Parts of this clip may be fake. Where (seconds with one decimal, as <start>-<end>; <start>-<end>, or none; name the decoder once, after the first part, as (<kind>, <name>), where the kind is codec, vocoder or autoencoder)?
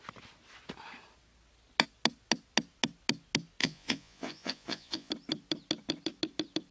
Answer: 3.6-5.1 (vocoder, Vocos)